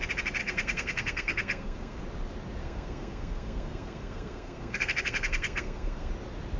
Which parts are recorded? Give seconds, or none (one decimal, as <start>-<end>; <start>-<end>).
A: 0.0-0.4; 2.0-2.6; 6.1-6.6